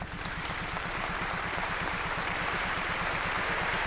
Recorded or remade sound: remade